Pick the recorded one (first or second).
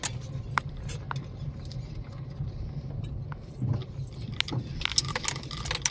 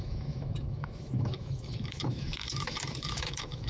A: first